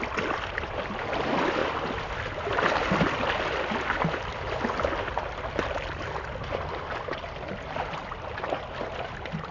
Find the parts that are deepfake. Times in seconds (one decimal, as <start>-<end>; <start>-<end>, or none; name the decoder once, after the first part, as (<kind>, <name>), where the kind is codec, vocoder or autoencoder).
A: 1.6-4.0 (vocoder, BigVGAN v2)